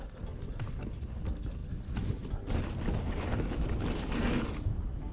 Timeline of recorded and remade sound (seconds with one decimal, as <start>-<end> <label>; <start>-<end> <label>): 0.0-5.1 recorded